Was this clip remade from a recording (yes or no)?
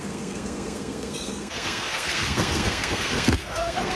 yes